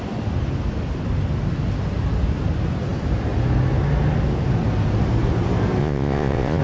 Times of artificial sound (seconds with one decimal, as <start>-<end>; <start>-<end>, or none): 5.8-6.6